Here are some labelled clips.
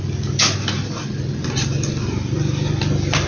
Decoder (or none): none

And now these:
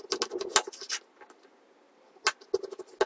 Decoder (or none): none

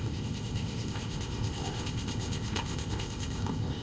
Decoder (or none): codec, ZipCodec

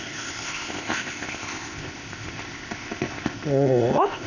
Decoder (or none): codec, ZipCodec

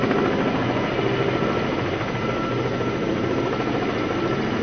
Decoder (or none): none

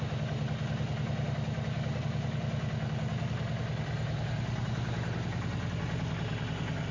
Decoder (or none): none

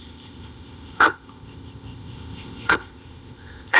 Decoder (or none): codec, ZipCodec